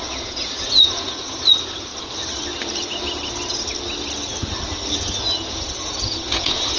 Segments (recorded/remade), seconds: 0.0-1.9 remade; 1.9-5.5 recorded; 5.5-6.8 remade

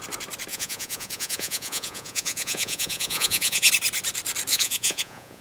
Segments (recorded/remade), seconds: 0.0-0.5 recorded; 0.5-3.7 remade; 3.7-4.5 recorded; 4.5-5.4 remade

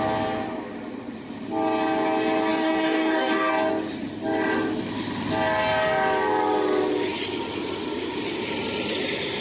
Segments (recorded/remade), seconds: 0.0-2.5 recorded; 2.5-3.5 remade; 3.5-9.4 recorded